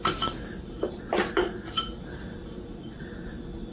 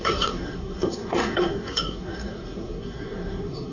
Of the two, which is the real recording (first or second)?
first